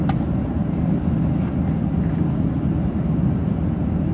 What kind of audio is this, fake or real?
real